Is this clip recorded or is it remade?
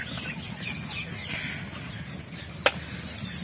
recorded